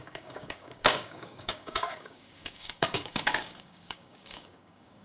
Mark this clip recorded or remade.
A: remade